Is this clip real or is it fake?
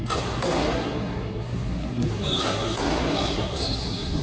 fake